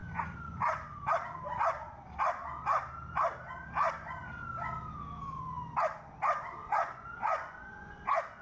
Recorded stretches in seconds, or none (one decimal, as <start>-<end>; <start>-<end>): 1.1-6.6; 8.0-8.4